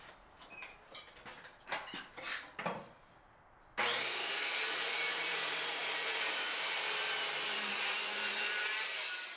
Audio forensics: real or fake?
fake